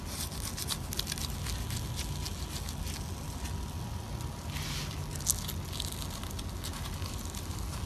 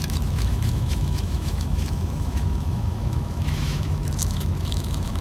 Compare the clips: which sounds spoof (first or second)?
second